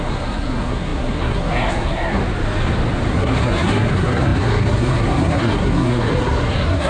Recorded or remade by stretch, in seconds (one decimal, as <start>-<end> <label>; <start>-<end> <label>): 0.0-2.2 remade; 2.2-3.1 recorded; 3.1-6.9 remade

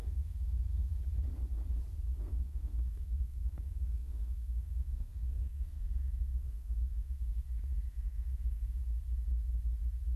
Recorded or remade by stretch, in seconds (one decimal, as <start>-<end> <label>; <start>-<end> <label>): 0.0-1.0 remade; 1.0-2.2 recorded; 2.2-7.4 remade; 7.4-7.9 recorded; 7.9-8.8 remade; 8.8-10.2 recorded

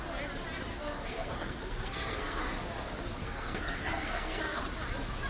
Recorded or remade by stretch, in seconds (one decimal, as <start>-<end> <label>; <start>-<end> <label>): 0.0-0.7 recorded; 0.7-2.4 remade; 2.4-3.2 recorded; 3.2-4.6 remade; 4.6-5.3 recorded

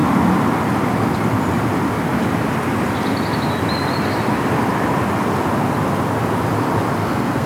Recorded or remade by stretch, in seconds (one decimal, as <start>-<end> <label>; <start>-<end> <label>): 0.0-7.0 recorded; 7.0-7.5 remade

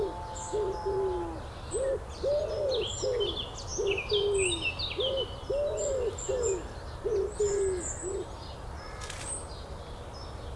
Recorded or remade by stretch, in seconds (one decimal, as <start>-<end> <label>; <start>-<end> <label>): 0.0-10.6 recorded

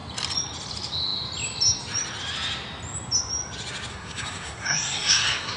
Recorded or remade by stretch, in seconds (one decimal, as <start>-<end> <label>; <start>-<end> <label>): 0.0-3.9 recorded; 3.9-5.6 remade

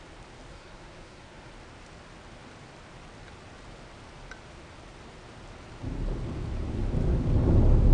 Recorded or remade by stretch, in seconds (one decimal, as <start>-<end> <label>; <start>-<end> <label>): 0.0-0.5 recorded; 0.5-1.5 remade; 1.5-7.9 recorded